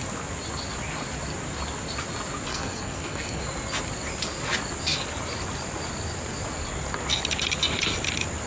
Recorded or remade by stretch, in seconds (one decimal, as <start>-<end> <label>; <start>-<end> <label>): 0.0-2.5 recorded; 2.5-3.4 remade; 3.4-8.5 recorded